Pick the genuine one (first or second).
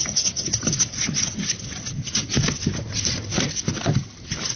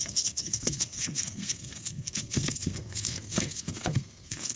first